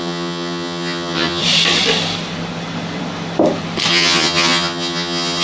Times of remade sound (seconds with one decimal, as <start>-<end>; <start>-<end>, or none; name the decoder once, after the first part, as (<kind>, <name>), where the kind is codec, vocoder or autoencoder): 0.0-1.4 (vocoder, HiFi-GAN); 3.9-5.4